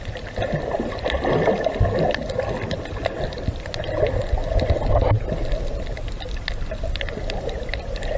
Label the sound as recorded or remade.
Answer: recorded